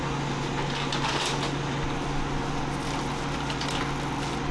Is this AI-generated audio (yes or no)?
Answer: no